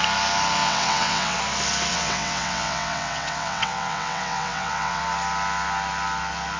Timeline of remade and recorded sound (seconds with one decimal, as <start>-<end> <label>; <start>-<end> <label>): 0.0-0.6 recorded; 0.6-1.4 remade; 1.4-1.9 recorded; 1.9-5.0 remade; 5.0-6.6 recorded